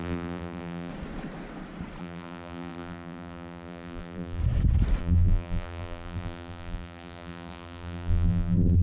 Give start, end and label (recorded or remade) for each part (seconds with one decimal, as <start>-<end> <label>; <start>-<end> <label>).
0.0-0.9 remade; 0.9-2.0 recorded; 2.0-4.4 remade; 4.4-5.0 recorded; 5.0-8.8 remade

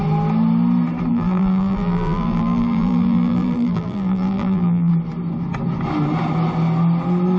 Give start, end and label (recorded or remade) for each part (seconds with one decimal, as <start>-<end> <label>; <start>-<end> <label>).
0.0-1.1 recorded; 1.1-4.9 remade; 4.9-7.4 recorded

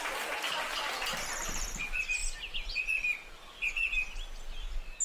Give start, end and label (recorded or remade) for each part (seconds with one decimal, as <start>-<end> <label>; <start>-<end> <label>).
0.0-5.0 recorded

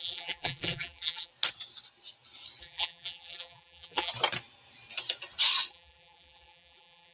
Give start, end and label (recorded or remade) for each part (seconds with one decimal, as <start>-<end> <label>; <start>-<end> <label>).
0.0-1.3 remade; 1.3-2.6 recorded; 2.6-4.1 remade; 4.1-5.7 recorded; 5.7-7.1 remade

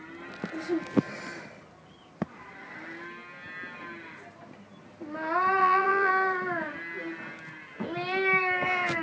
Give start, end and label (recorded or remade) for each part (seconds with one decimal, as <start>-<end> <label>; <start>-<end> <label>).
0.0-5.6 recorded; 5.6-6.1 remade; 6.1-9.0 recorded

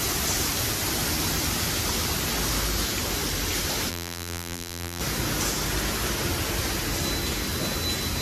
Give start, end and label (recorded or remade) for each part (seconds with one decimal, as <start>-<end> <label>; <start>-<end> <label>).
0.0-3.9 recorded; 3.9-5.0 remade; 5.0-8.2 recorded